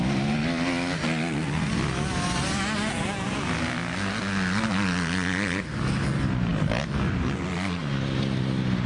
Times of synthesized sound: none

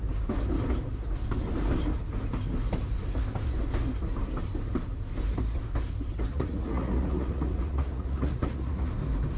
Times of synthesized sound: 6.3-8.9

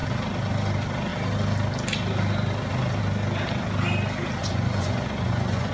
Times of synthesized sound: 4.4-5.7

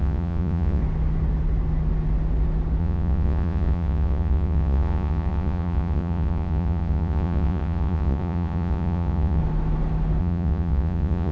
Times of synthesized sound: 0.0-0.8; 2.8-9.4; 10.2-11.3

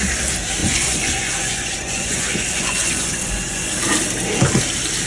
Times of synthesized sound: 0.6-3.7

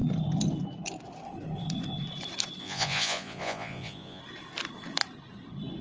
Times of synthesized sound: 2.6-4.2